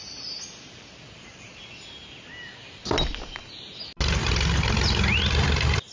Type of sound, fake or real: real